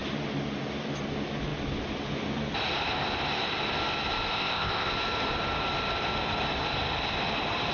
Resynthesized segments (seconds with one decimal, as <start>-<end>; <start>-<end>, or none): 4.3-4.9